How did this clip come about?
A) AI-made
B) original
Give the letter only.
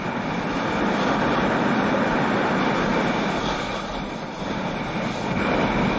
B